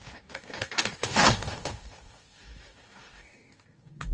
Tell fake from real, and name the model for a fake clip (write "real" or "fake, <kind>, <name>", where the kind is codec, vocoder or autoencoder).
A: fake, codec, DAC